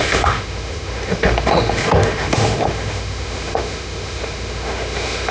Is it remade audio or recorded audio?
remade